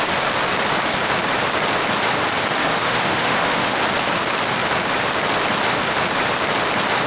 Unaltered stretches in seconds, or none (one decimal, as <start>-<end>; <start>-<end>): 0.0-2.6; 3.8-7.1